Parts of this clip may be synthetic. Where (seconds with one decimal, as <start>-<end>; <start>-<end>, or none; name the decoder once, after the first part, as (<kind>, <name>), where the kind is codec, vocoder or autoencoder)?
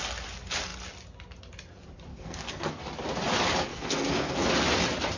2.1-2.8 (codec, SNAC); 3.7-4.5